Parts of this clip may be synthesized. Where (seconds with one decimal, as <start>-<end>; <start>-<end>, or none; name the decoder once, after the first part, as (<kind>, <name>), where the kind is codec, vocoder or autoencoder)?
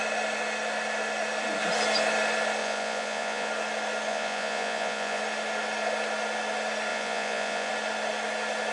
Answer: 2.6-3.5 (vocoder, Vocos); 4.1-5.2; 6.9-7.7